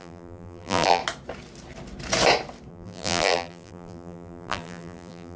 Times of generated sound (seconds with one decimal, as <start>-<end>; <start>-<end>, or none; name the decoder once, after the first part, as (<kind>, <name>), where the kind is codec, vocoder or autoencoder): 0.0-1.0 (vocoder, BigVGAN v2); 2.7-5.4